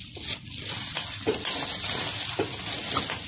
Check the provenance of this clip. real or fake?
real